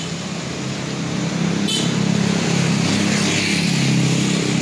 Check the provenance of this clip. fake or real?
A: real